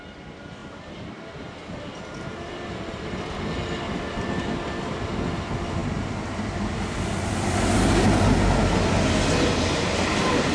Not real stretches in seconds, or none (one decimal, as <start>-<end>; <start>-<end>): none